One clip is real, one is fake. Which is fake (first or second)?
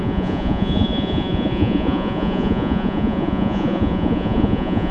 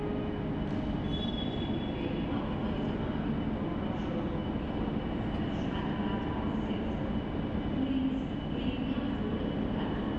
first